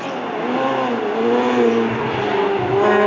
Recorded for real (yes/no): yes